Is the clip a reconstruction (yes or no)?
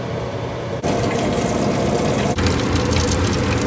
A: no